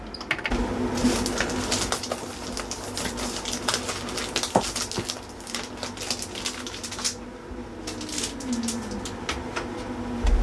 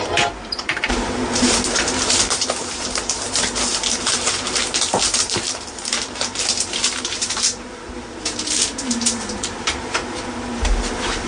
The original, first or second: first